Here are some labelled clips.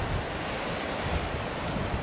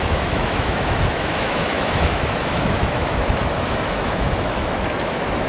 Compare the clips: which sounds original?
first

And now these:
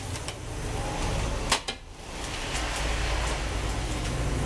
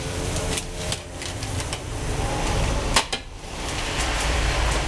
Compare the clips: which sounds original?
first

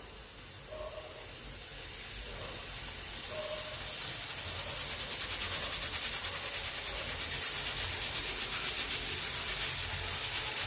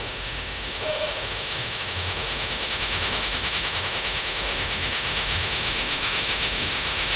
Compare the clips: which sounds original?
first